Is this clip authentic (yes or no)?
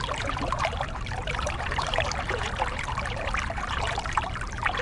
no